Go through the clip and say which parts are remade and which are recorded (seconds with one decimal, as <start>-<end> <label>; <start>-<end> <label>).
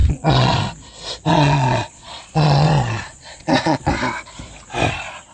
0.0-0.6 remade; 0.6-1.3 recorded; 1.3-3.9 remade; 3.9-5.3 recorded